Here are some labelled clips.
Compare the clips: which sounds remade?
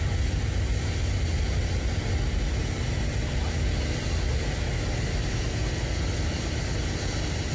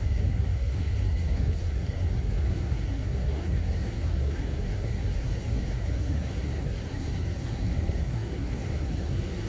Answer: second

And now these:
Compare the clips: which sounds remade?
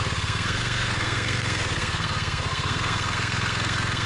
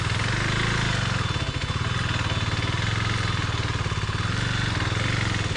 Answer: first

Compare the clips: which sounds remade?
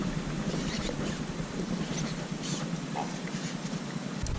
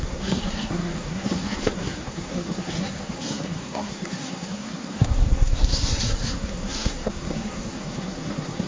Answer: second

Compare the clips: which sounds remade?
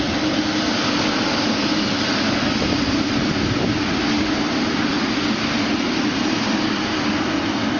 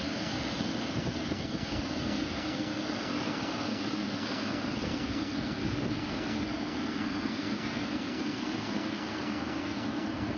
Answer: second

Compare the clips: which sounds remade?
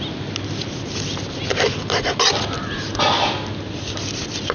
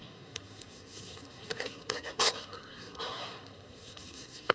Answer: second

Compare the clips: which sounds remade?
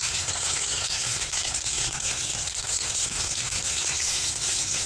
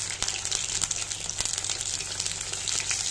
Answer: first